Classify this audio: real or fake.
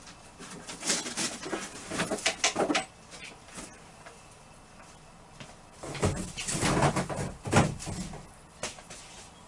real